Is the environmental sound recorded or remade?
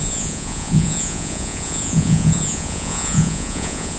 remade